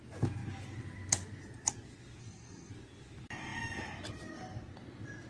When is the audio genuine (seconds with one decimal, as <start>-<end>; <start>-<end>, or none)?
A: 0.0-2.2; 2.7-5.3